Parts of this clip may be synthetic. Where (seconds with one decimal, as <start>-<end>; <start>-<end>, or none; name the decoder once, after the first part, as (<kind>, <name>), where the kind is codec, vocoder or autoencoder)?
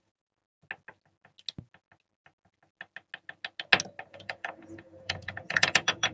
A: 0.0-0.4 (vocoder, Vocos); 4.1-6.1